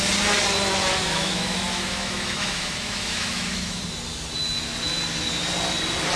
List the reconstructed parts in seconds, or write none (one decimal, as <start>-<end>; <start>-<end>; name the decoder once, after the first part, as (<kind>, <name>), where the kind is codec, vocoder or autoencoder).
1.0-3.8 (autoencoder, DAC-VAE)